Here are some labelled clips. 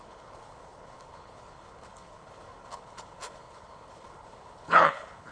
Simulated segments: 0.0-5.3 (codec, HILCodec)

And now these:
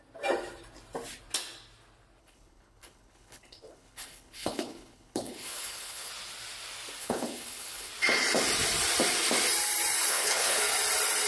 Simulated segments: 2.2-6.1 (codec, HILCodec); 7.0-7.9; 10.1-10.6

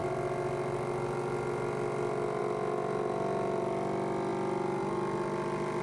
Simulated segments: none

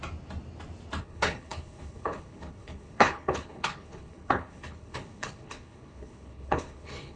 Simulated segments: 1.0-7.2 (codec, HILCodec)

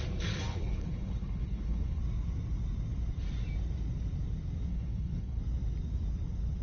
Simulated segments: 0.5-2.0 (codec, HILCodec); 4.7-5.4

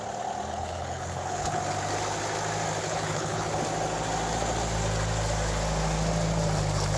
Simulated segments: 0.5-1.6 (codec, HILCodec); 2.8-3.6

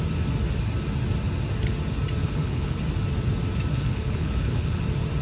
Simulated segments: 2.2-2.8 (codec, HILCodec); 3.8-4.8

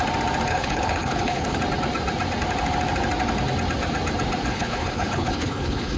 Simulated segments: 0.5-1.6 (codec, HILCodec); 4.5-6.0